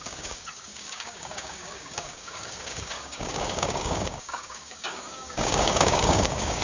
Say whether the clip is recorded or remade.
remade